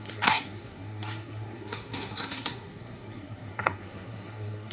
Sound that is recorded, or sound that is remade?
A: remade